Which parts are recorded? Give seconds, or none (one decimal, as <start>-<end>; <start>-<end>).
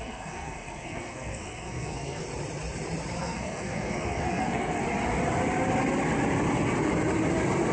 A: 2.2-3.2; 4.8-7.7